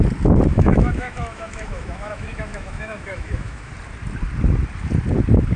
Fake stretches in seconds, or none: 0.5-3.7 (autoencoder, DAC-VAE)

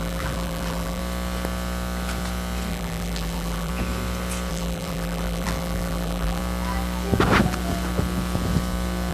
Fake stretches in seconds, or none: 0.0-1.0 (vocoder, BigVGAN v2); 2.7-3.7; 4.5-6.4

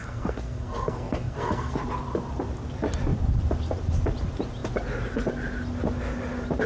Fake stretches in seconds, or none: 0.0-1.8 (codec, SNAC)